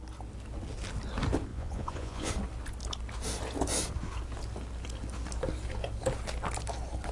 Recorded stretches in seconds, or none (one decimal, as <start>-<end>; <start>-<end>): 0.0-1.5; 2.3-7.1